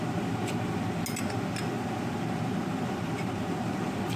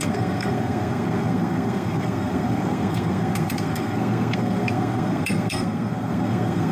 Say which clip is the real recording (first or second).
first